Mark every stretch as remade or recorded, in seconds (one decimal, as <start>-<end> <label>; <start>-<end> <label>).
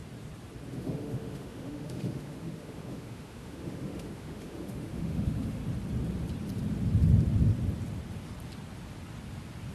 0.0-0.7 recorded; 0.7-5.6 remade; 5.6-9.7 recorded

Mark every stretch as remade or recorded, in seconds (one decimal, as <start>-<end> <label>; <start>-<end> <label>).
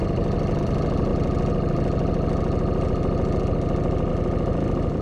0.0-5.0 recorded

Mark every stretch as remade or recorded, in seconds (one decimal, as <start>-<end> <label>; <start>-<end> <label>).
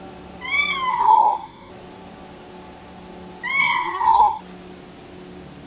0.0-0.9 recorded; 0.9-1.7 remade; 1.7-3.6 recorded; 3.6-4.4 remade; 4.4-5.7 recorded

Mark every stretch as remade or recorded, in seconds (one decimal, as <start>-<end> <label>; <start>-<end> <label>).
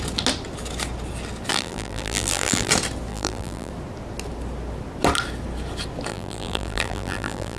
0.0-1.5 recorded; 1.5-2.7 remade; 2.7-3.1 recorded; 3.1-3.7 remade; 3.7-6.1 recorded; 6.1-7.6 remade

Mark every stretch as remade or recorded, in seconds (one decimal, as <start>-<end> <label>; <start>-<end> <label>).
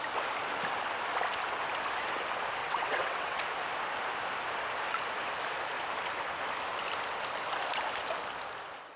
0.0-2.6 recorded; 2.6-3.4 remade; 3.4-9.0 recorded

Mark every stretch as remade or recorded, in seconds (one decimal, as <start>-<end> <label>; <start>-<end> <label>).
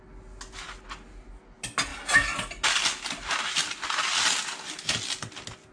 0.0-5.7 recorded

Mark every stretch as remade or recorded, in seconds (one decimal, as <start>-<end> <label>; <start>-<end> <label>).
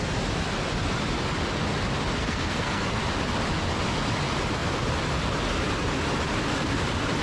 0.0-2.2 recorded; 2.2-3.0 remade; 3.0-7.2 recorded